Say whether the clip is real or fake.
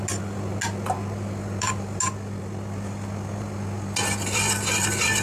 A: real